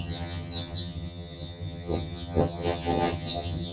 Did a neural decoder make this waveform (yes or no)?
yes